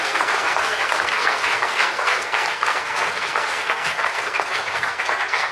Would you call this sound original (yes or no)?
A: no